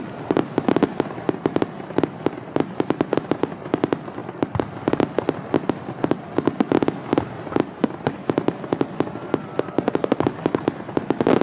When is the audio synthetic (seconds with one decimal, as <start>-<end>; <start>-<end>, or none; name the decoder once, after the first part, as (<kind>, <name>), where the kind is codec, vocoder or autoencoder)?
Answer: 4.2-6.1 (vocoder, BigVGAN v2)